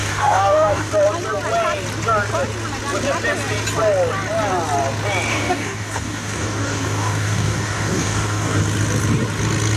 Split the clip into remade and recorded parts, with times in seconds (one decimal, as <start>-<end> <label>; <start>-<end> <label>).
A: 0.0-0.9 remade; 0.9-5.3 recorded; 5.3-8.6 remade; 8.6-9.8 recorded